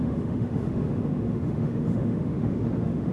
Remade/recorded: remade